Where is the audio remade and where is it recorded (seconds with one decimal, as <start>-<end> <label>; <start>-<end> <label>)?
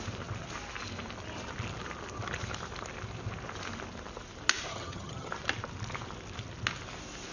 0.0-4.7 recorded; 4.7-5.3 remade; 5.3-7.3 recorded